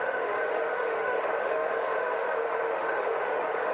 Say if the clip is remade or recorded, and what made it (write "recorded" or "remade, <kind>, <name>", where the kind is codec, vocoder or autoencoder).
remade, autoencoder, DAC-VAE